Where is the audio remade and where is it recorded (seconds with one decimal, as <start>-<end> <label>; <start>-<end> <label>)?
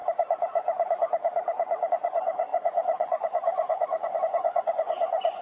0.0-1.9 recorded; 1.9-5.4 remade